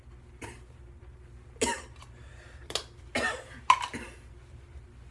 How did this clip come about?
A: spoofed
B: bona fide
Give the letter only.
B